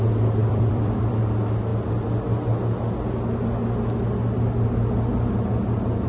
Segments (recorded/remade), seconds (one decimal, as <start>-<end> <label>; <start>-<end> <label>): 0.0-0.4 recorded; 0.4-1.2 remade; 1.2-6.1 recorded